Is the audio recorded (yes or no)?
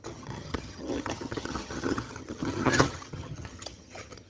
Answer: no